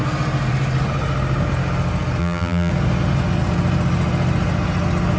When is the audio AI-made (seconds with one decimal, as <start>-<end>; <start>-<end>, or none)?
2.2-2.7